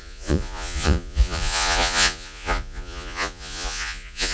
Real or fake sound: fake